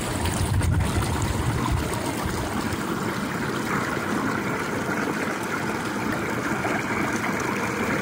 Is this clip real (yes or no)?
yes